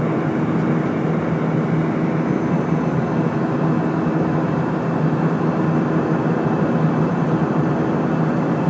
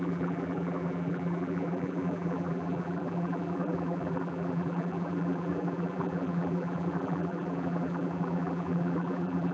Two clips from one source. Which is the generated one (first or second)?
second